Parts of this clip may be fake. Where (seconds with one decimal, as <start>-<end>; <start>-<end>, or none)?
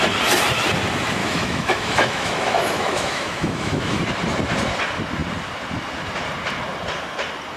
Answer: 1.2-4.0